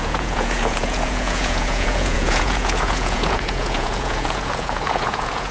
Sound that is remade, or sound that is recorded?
remade